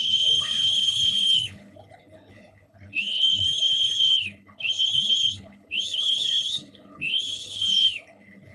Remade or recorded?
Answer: remade